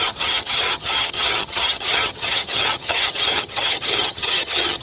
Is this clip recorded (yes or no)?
no